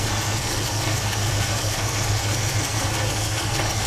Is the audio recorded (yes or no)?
no